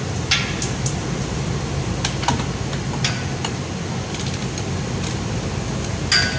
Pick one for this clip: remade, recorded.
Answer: recorded